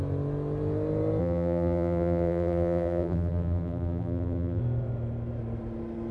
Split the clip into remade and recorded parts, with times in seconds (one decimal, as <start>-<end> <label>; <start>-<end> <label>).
0.0-1.2 recorded; 1.2-4.6 remade; 4.6-6.1 recorded

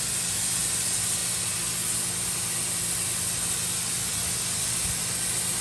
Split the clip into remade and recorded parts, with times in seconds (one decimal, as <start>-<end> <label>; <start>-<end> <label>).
0.0-5.6 recorded

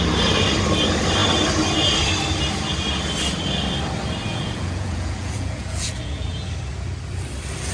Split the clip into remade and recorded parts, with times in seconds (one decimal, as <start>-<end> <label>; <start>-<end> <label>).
0.0-4.3 recorded; 4.3-6.5 remade; 6.5-7.7 recorded

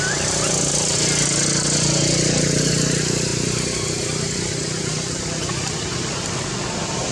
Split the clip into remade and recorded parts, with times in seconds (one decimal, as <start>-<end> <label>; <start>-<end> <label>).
0.0-7.1 recorded

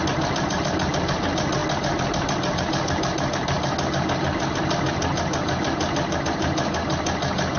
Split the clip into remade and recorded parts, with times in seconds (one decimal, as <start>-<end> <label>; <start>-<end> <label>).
0.0-7.6 recorded

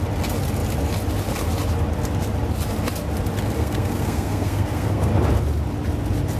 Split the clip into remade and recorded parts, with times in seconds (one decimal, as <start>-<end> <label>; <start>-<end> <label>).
0.0-3.6 recorded; 3.6-5.1 remade; 5.1-6.4 recorded

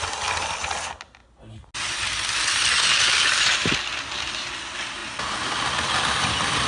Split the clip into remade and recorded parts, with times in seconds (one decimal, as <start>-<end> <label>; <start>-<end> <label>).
0.0-6.7 recorded